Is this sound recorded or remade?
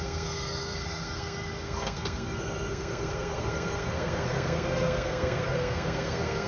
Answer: remade